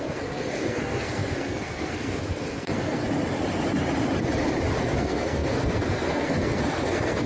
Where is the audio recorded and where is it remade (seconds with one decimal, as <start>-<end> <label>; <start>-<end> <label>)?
0.0-3.0 remade; 3.0-4.8 recorded; 4.8-7.3 remade